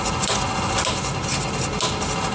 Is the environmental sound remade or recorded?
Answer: recorded